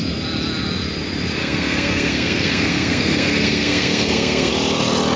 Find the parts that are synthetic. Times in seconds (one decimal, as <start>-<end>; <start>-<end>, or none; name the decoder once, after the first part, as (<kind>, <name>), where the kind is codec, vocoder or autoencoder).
1.4-4.5 (codec, SNAC)